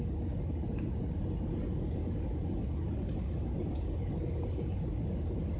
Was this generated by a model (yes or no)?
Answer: no